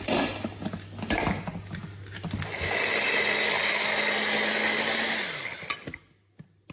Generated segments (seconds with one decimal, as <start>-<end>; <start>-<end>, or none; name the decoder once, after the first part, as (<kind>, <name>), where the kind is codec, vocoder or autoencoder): none